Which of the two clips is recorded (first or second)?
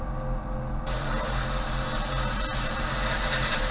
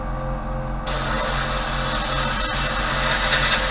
second